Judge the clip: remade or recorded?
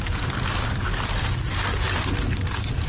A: recorded